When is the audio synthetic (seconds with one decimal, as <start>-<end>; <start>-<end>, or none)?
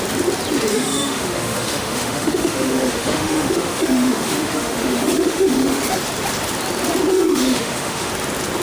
0.7-5.8; 7.1-8.1